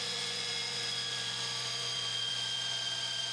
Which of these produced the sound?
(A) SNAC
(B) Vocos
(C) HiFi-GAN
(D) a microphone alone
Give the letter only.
B